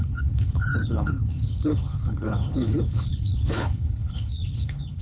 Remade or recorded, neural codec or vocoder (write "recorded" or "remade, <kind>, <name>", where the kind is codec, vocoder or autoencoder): remade, codec, HILCodec